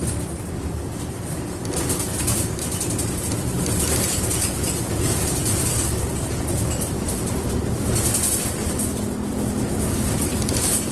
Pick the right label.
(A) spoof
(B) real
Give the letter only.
B